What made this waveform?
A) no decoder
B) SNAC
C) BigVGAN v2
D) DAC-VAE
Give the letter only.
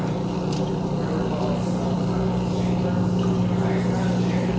A